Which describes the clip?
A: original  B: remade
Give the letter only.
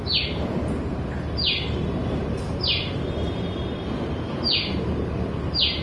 A